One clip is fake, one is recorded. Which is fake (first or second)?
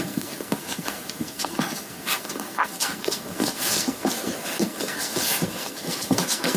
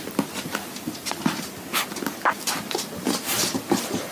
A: first